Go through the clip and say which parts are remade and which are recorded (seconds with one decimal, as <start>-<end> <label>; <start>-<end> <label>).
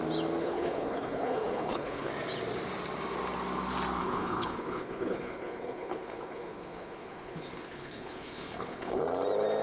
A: 0.0-0.4 recorded; 0.4-2.1 remade; 2.1-4.0 recorded; 4.0-9.0 remade; 9.0-9.6 recorded